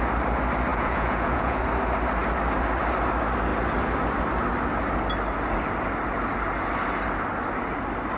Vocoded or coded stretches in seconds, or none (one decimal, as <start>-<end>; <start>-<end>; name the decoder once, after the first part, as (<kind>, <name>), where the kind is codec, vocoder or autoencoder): 0.7-1.6 (vocoder, Vocos)